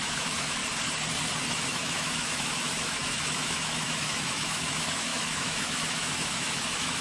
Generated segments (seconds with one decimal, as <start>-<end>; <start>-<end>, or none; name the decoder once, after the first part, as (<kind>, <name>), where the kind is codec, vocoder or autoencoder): 0.0-0.6 (autoencoder, DAC-VAE); 1.5-7.0